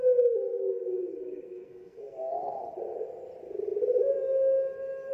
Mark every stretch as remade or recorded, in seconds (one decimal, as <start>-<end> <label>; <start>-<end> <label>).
0.0-0.5 recorded; 0.5-2.6 remade; 2.6-5.1 recorded